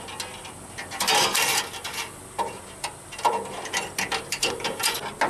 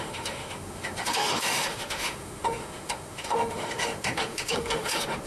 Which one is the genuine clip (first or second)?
first